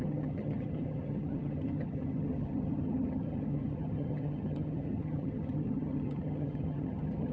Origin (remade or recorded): remade